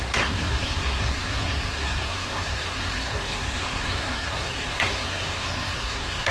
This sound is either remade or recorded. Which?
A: remade